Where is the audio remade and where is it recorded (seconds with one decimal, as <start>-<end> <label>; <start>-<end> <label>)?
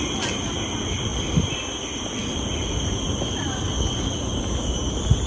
0.0-5.3 recorded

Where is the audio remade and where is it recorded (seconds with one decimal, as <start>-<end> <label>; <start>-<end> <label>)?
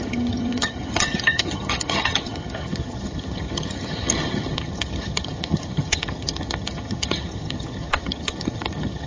0.0-9.1 remade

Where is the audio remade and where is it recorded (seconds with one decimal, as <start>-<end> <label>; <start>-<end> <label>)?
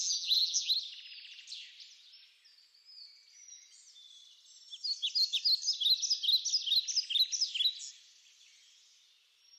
0.0-0.7 remade; 0.7-9.6 recorded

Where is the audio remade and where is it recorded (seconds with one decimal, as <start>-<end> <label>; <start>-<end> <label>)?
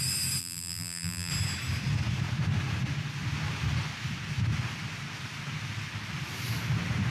0.0-0.4 recorded; 0.4-1.3 remade; 1.3-7.1 recorded